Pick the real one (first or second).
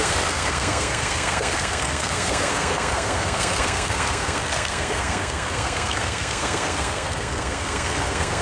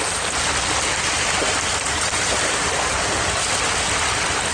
second